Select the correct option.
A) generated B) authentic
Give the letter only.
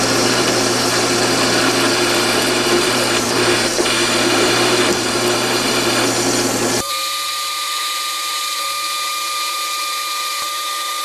A